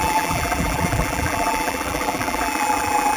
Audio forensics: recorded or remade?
remade